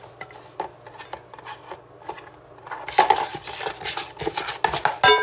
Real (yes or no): yes